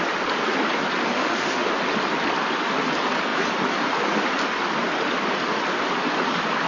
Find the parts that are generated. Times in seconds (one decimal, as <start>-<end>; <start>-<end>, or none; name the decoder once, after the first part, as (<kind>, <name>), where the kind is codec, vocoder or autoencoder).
1.1-1.7 (autoencoder, DAC-VAE)